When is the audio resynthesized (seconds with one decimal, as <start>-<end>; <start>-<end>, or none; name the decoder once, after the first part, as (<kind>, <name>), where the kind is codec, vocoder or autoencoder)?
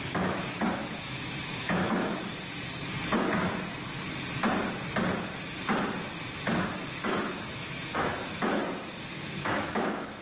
0.0-2.2 (autoencoder, DAC-VAE); 6.9-8.6; 9.2-10.2